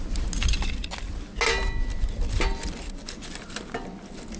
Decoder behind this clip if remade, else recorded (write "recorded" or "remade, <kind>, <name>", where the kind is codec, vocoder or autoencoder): recorded